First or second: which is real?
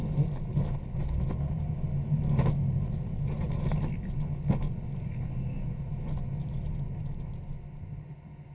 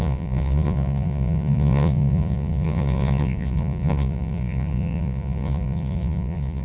first